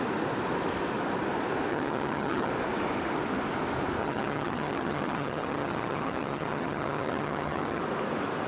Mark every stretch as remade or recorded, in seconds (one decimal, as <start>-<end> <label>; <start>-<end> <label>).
0.0-1.7 recorded; 1.7-2.5 remade; 2.5-4.0 recorded; 4.0-7.8 remade; 7.8-8.5 recorded

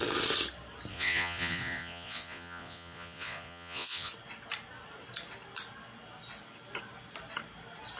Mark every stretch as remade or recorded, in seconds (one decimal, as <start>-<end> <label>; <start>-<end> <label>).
0.0-0.9 recorded; 0.9-4.1 remade; 4.1-8.0 recorded

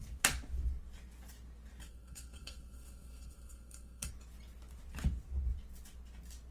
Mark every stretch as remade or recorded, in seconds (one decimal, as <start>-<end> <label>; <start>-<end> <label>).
0.0-1.8 recorded; 1.8-4.1 remade; 4.1-6.5 recorded

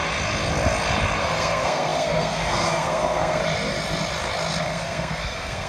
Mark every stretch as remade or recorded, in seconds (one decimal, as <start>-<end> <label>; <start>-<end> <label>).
0.0-1.2 recorded; 1.2-3.4 remade; 3.4-4.6 recorded; 4.6-5.7 remade